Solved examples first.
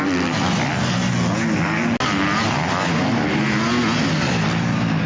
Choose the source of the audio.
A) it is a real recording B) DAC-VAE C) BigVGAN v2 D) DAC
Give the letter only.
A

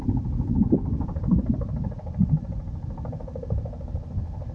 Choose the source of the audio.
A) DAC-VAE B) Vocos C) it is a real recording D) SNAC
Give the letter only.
C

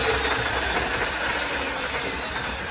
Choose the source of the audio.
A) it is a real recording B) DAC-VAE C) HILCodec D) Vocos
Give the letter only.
A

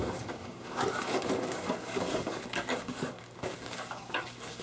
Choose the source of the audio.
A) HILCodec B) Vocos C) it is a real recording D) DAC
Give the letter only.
D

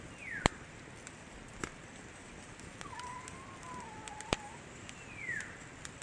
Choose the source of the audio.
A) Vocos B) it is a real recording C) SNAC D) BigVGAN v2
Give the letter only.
B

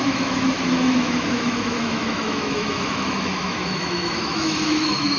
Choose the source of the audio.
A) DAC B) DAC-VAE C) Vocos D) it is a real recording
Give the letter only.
B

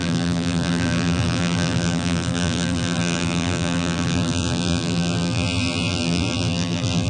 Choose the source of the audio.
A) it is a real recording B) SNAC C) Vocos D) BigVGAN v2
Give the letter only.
D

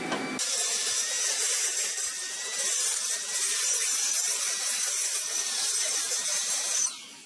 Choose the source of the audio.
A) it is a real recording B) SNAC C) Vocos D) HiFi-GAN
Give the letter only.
A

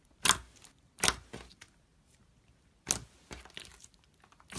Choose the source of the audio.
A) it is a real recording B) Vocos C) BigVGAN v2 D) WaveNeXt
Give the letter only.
A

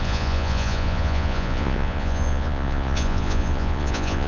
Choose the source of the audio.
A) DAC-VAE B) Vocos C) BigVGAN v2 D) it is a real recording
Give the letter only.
B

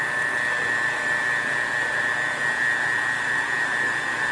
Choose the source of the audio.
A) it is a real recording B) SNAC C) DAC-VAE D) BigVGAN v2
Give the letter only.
A